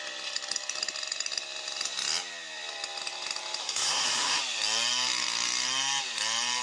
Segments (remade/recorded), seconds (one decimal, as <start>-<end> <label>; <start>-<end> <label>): 0.0-3.6 recorded; 3.6-4.4 remade; 4.4-6.6 recorded